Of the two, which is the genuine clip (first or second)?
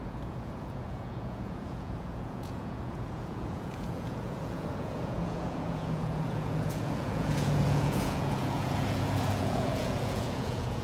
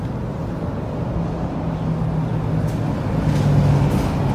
second